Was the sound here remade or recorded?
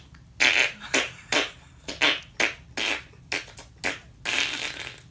recorded